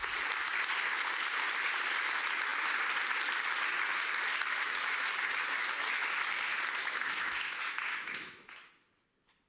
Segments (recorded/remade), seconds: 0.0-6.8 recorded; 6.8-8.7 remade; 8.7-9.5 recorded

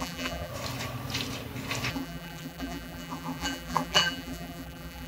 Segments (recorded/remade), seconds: 0.0-0.5 remade; 0.5-1.9 recorded; 1.9-5.1 remade

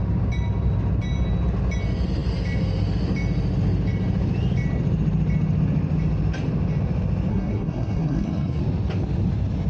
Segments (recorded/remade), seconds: 0.0-7.3 recorded; 7.3-8.6 remade; 8.6-9.7 recorded

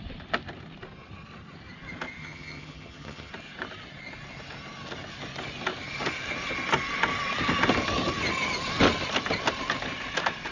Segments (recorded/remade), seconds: 0.0-2.2 recorded; 2.2-3.3 remade; 3.3-10.5 recorded

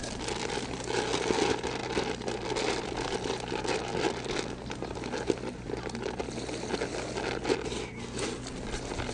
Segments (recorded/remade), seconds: 0.0-9.1 recorded